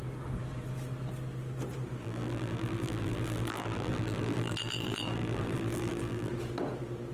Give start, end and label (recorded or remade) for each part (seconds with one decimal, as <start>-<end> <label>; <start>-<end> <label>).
0.0-2.0 recorded; 2.0-6.3 remade; 6.3-7.1 recorded